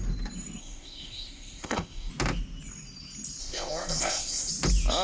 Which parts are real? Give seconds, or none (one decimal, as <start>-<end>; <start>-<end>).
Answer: 0.0-0.6; 2.1-3.4; 4.5-5.0